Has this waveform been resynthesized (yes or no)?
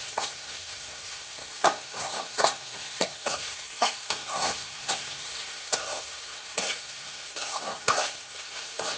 yes